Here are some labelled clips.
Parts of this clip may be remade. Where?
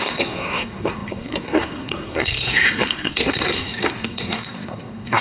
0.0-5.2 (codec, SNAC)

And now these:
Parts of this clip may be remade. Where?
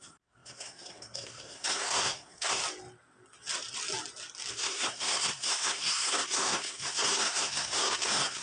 0.0-2.6 (codec, SNAC); 4.5-8.4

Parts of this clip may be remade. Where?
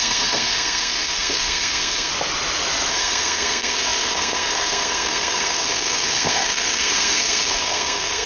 0.0-2.1 (codec, SNAC); 2.9-8.3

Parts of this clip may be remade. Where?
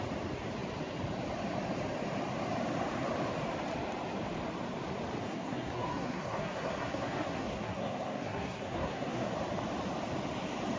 5.2-9.3 (codec, SNAC)